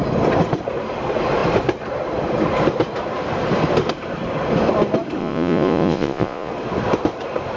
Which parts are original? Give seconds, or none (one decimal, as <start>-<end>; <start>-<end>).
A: 0.0-5.2; 6.5-7.6